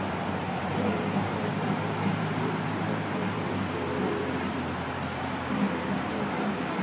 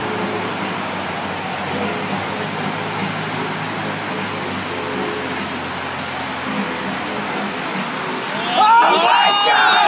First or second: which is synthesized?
first